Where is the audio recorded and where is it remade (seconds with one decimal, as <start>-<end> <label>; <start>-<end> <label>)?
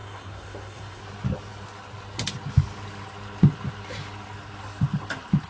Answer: 0.0-1.0 remade; 1.0-5.5 recorded